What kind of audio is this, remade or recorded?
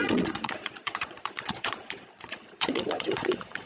remade